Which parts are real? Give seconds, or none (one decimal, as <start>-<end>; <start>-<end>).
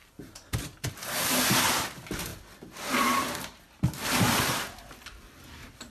none